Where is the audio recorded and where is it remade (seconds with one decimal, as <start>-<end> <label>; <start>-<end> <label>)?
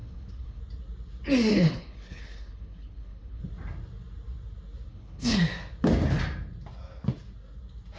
0.0-0.6 remade; 0.6-1.5 recorded; 1.5-3.4 remade; 3.4-4.9 recorded; 4.9-5.4 remade; 5.4-8.0 recorded